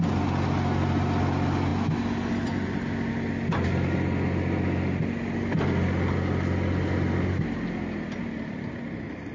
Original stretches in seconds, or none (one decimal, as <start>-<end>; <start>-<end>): 0.0-9.3